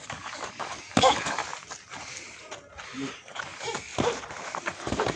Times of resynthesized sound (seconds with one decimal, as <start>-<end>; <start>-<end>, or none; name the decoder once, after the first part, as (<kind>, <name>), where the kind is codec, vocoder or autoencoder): 0.0-1.4 (codec, DAC); 3.1-3.9; 4.6-5.2